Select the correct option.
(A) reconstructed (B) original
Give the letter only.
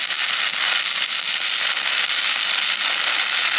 B